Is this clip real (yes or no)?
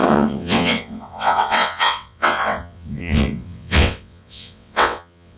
no